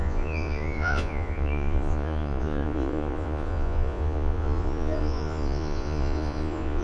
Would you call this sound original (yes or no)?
no